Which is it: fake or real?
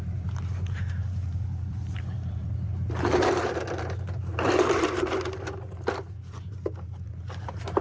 fake